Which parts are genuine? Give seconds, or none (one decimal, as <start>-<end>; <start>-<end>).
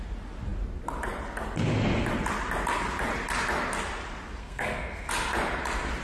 0.0-4.4; 5.1-6.0